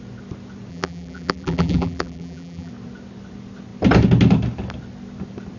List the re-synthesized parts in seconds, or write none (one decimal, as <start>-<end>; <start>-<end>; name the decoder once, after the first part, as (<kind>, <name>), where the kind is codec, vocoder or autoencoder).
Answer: 0.7-2.7 (vocoder, BigVGAN v2)